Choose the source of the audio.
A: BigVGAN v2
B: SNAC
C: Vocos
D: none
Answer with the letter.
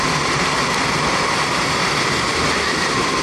D